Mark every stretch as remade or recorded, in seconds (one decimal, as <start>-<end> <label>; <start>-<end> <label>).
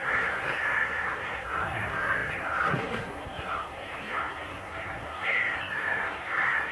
0.0-6.7 remade